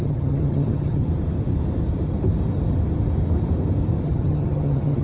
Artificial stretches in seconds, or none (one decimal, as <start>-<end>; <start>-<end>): 0.0-1.0; 4.0-5.0